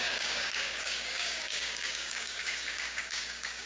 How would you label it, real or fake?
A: fake